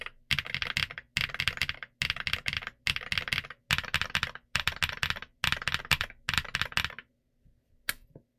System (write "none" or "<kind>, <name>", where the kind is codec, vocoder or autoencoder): none